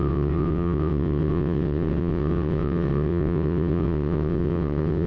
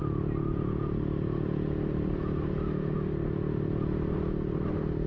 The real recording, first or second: second